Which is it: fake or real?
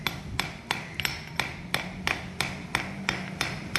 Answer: real